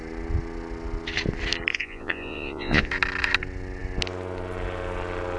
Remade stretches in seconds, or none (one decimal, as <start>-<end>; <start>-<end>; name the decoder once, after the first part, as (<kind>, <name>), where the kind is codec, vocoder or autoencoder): 1.7-2.9 (vocoder, Vocos)